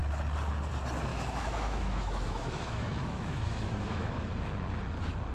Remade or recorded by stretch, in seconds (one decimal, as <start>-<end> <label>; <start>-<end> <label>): 0.0-1.1 recorded; 1.1-4.3 remade; 4.3-5.3 recorded